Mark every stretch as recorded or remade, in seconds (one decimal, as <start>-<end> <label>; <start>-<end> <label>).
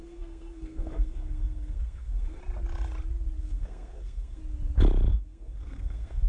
0.0-2.4 remade; 2.4-3.4 recorded; 3.4-4.4 remade; 4.4-5.1 recorded; 5.1-6.3 remade